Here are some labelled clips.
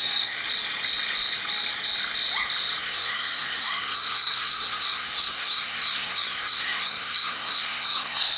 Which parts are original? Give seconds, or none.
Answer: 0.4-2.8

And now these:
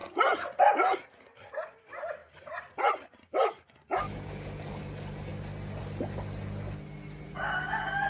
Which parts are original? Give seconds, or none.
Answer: 0.0-8.1